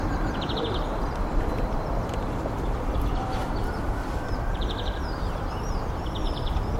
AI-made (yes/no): yes